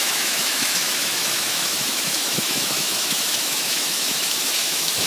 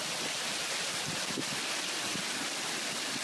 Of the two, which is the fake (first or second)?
first